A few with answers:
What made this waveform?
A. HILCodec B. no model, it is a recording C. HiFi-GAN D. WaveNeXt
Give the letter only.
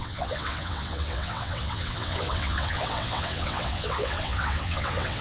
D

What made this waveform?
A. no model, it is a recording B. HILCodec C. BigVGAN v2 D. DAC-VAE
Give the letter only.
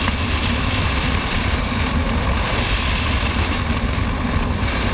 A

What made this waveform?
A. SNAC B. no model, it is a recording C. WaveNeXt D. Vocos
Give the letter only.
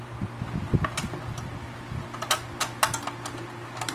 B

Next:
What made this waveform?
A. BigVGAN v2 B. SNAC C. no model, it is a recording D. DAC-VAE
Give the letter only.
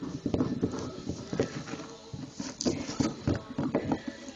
C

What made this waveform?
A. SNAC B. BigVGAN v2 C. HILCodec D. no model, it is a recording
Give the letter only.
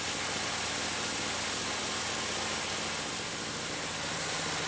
D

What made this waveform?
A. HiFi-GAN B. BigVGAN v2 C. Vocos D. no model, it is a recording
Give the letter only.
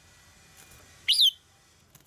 D